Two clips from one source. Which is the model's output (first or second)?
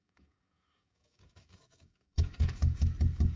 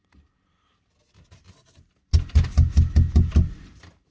first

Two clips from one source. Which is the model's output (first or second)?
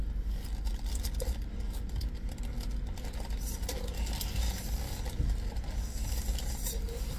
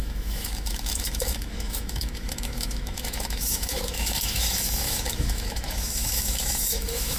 second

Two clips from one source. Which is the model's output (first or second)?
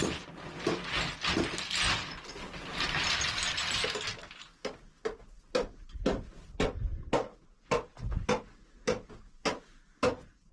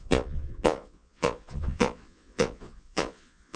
second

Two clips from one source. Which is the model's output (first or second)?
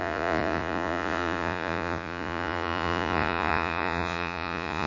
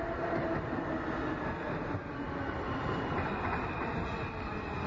first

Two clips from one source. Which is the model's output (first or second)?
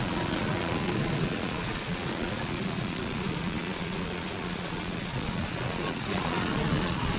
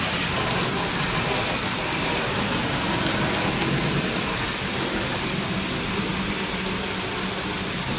first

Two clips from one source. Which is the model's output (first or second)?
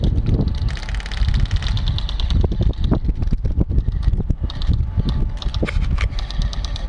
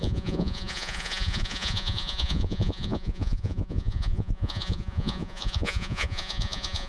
second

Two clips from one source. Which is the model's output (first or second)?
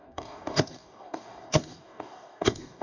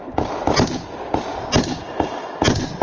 first